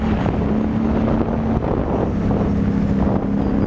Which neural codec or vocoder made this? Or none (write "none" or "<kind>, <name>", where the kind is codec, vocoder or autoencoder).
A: none